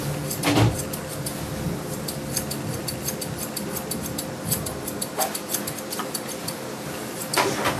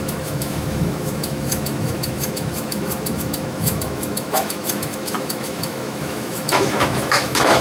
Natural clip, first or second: first